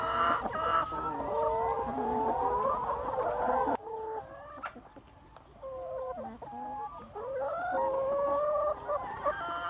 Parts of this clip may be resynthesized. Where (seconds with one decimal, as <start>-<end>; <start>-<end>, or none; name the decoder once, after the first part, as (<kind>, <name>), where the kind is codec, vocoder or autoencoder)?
none